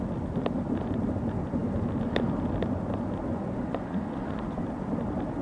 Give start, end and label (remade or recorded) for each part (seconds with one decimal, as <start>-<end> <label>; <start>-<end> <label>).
0.0-3.3 recorded; 3.3-4.6 remade; 4.6-5.4 recorded